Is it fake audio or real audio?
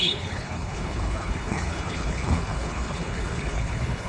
fake